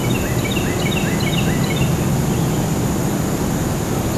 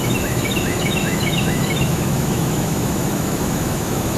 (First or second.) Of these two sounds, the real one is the first